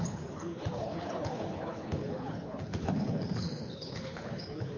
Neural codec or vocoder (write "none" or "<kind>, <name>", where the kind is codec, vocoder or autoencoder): codec, HILCodec